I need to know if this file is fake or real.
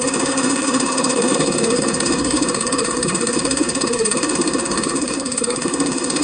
fake